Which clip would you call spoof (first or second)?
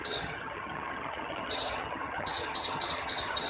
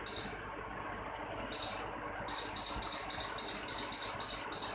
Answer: first